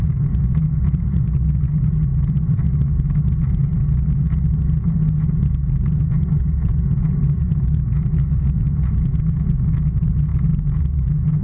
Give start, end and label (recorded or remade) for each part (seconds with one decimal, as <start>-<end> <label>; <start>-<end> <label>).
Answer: 0.0-2.1 remade; 2.1-3.3 recorded; 3.3-11.4 remade